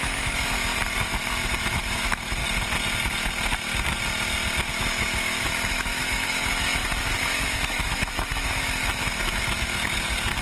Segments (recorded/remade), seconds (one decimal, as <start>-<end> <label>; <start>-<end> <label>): 0.0-0.7 remade; 0.7-1.6 recorded; 1.6-2.4 remade; 2.4-4.7 recorded; 4.7-10.4 remade